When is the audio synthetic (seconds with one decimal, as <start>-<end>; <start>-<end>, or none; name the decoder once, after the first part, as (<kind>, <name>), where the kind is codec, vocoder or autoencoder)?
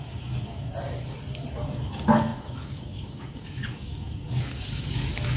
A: 0.0-0.7 (codec, DAC); 1.9-5.4